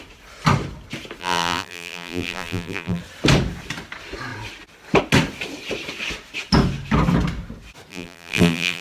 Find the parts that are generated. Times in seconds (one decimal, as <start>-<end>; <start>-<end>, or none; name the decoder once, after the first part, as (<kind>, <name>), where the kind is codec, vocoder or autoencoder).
1.2-3.0 (vocoder, BigVGAN v2); 7.9-8.8